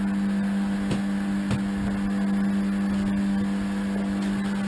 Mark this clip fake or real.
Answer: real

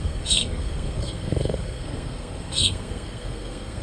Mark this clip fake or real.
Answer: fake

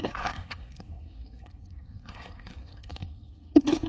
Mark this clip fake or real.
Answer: fake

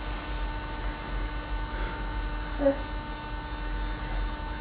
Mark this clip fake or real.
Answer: real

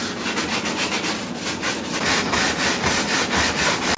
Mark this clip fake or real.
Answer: real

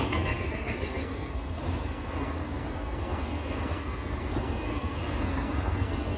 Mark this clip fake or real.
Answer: fake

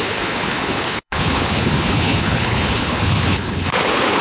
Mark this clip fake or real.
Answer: fake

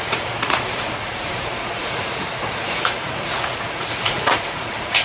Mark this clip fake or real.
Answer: fake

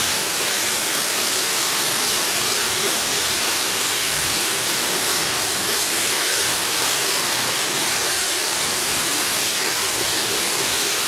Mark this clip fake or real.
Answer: fake